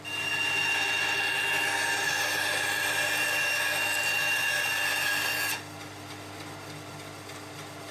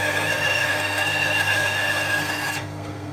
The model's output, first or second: second